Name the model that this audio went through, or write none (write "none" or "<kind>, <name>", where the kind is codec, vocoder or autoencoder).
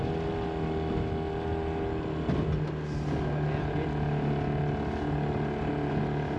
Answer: none